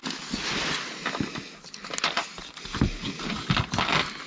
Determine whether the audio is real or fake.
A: real